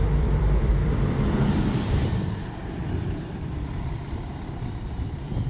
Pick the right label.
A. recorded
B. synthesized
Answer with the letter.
B